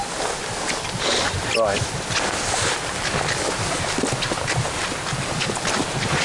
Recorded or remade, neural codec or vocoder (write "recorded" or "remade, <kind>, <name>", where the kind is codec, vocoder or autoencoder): recorded